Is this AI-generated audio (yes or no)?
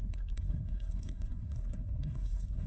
yes